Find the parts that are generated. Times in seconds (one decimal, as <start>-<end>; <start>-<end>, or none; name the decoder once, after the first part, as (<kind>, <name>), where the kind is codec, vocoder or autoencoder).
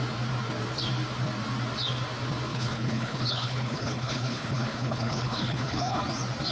2.5-6.0 (codec, HILCodec)